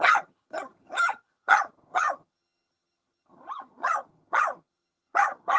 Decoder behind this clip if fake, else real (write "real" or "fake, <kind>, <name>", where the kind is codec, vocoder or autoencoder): fake, vocoder, HiFi-GAN